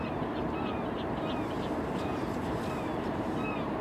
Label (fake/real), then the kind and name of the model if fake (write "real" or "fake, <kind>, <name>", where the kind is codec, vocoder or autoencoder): fake, vocoder, BigVGAN v2